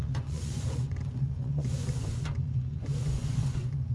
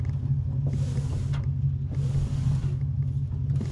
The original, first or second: second